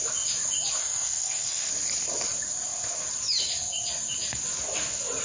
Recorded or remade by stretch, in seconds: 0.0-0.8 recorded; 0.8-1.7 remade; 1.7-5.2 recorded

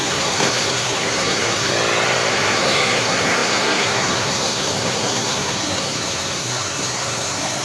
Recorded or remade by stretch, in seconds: 0.0-1.7 remade; 1.7-2.3 recorded; 2.3-7.6 remade